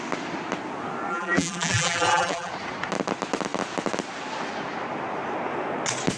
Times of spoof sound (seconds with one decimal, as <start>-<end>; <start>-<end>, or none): 1.1-2.5